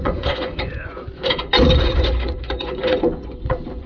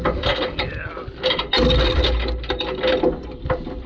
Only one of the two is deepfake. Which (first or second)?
first